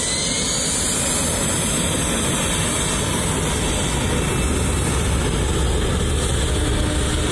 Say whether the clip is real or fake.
real